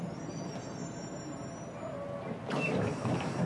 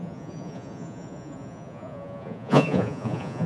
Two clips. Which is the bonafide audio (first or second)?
first